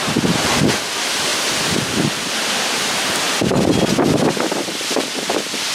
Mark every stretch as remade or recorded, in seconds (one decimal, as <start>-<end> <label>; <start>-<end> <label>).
0.0-5.7 remade